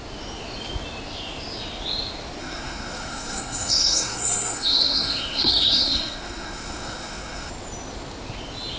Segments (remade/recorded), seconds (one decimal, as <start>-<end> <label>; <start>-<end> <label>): 0.0-2.4 recorded; 2.4-7.5 remade; 7.5-8.8 recorded